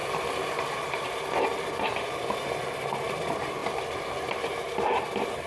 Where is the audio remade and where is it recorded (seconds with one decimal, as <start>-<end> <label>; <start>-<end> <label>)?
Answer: 0.0-5.5 recorded